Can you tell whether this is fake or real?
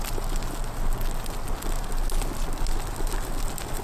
real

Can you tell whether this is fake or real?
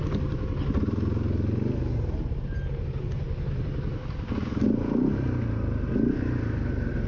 real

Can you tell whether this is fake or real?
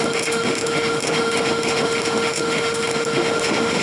fake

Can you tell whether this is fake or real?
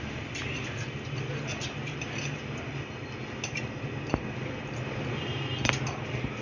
real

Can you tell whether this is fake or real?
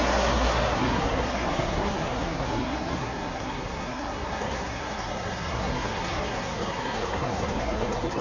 fake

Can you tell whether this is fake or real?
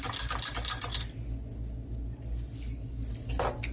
real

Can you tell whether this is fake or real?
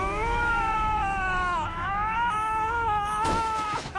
fake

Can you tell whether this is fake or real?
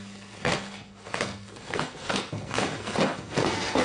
fake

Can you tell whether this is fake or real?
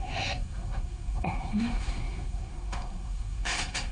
fake